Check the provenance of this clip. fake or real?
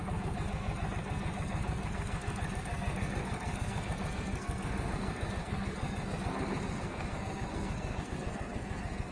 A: fake